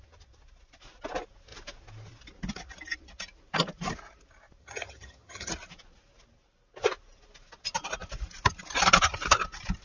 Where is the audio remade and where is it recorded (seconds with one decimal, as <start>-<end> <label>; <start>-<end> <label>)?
0.0-4.6 recorded; 4.6-5.5 remade; 5.5-9.8 recorded